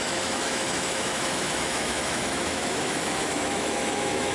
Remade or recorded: remade